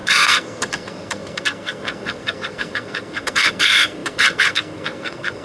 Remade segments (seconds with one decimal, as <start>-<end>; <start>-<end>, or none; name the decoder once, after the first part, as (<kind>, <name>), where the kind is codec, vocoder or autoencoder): 0.0-5.4 (codec, SNAC)